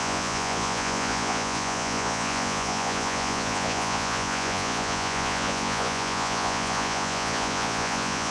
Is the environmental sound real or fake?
fake